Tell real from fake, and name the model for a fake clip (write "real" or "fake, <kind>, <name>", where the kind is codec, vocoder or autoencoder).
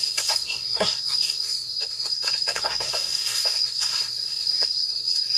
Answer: fake, codec, SNAC